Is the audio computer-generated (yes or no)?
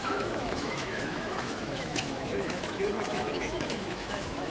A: yes